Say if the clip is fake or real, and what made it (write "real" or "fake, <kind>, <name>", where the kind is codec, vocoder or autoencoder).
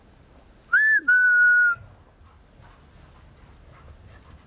real